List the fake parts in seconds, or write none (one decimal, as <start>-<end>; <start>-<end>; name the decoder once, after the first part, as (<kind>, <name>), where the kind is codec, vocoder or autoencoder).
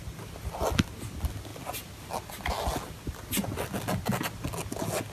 none